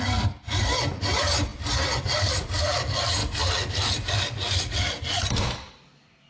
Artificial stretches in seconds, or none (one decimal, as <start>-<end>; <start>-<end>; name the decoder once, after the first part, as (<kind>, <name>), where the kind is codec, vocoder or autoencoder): none